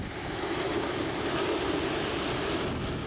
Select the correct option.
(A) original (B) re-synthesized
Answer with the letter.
A